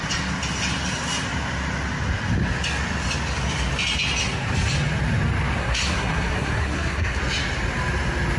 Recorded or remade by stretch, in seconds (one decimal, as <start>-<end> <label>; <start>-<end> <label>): 0.0-5.6 recorded; 5.6-7.2 remade; 7.2-8.4 recorded